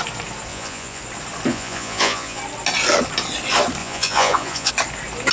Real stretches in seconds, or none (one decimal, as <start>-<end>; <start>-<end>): 0.0-0.5; 1.0-1.5; 2.4-3.8; 4.7-5.3